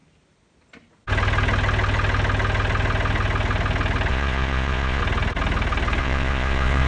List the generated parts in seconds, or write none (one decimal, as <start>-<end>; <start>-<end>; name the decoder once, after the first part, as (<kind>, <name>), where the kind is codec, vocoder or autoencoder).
4.1-5.0 (vocoder, Vocos); 6.0-6.9